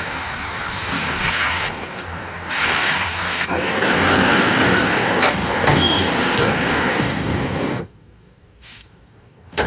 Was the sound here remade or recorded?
remade